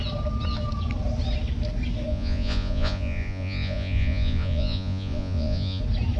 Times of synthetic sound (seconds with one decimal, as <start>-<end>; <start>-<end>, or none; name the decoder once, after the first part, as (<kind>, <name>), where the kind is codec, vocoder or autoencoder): 2.1-5.8 (vocoder, Vocos)